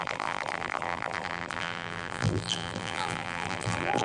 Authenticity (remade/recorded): remade